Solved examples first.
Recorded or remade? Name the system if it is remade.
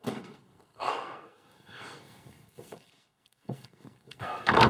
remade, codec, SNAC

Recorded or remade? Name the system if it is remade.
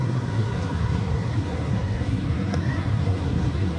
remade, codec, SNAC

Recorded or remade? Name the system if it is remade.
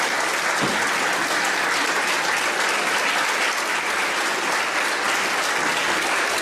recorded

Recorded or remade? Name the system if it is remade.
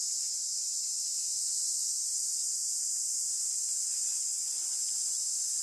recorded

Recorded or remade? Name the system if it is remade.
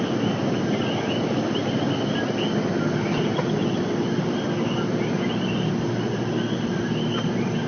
recorded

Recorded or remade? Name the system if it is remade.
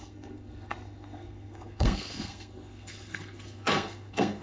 remade, codec, SNAC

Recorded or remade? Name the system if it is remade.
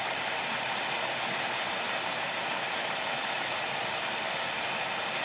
recorded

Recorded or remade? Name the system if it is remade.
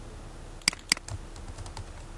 recorded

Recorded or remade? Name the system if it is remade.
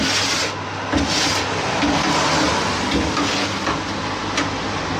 recorded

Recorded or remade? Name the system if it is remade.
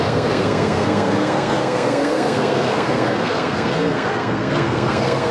remade, codec, SNAC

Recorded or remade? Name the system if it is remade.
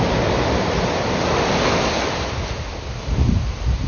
recorded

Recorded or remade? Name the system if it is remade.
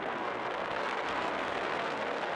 remade, codec, SNAC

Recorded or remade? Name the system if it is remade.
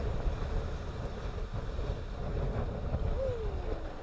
recorded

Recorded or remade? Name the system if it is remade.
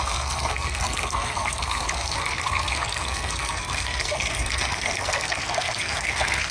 remade, codec, SNAC